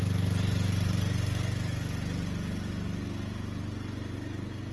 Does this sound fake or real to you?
real